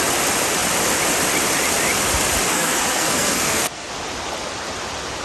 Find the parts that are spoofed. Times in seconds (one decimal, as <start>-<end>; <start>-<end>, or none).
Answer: 2.5-3.9